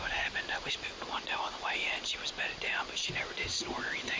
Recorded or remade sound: recorded